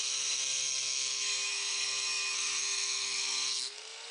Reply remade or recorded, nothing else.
remade